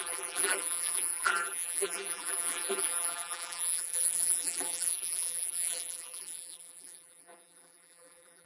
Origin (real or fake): fake